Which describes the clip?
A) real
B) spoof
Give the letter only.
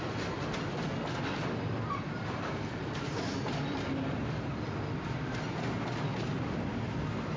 A